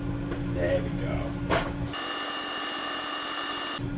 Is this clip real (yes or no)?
yes